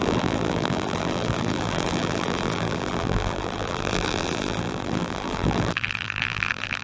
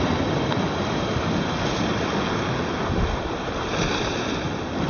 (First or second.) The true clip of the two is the second